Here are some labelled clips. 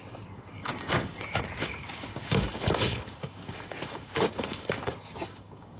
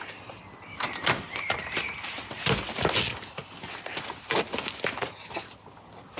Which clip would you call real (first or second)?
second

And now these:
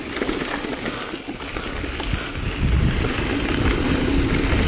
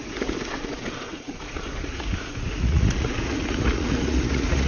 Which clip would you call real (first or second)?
first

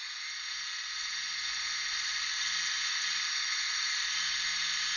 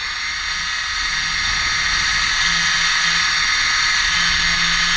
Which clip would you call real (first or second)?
second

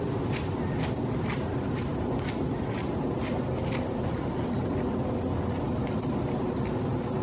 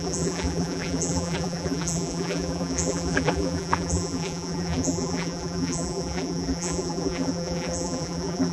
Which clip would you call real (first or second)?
first